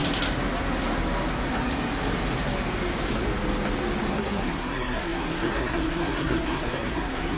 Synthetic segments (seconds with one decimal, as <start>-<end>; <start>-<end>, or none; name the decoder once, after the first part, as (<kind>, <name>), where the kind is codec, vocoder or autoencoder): 4.1-7.4 (codec, SNAC)